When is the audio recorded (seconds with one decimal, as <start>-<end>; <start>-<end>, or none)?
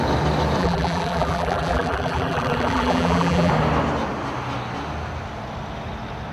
0.0-0.6; 3.5-6.3